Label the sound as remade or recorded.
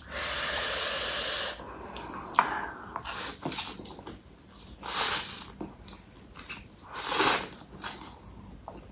recorded